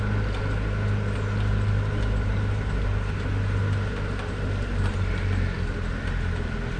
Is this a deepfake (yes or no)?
no